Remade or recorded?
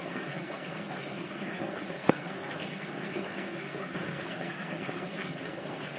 remade